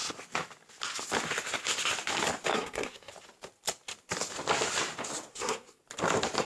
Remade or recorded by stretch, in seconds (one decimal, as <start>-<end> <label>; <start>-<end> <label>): 0.0-2.5 recorded; 2.5-3.1 remade; 3.1-5.3 recorded; 5.3-5.8 remade; 5.8-6.4 recorded

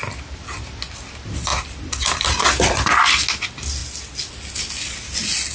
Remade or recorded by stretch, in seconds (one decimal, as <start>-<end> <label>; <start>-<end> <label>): 0.0-5.5 recorded

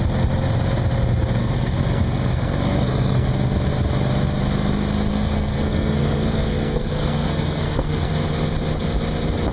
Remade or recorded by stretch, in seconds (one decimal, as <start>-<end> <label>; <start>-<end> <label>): 0.0-1.4 recorded; 1.4-3.3 remade; 3.3-5.1 recorded; 5.1-8.1 remade; 8.1-9.5 recorded